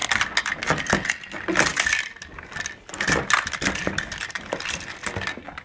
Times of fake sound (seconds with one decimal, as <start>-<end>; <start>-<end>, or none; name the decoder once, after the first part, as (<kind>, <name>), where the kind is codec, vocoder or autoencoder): none